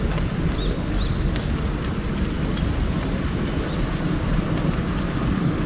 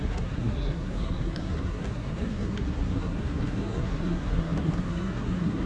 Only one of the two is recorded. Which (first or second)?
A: first